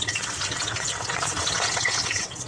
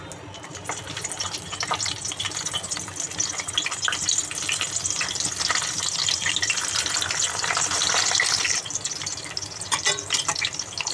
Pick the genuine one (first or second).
second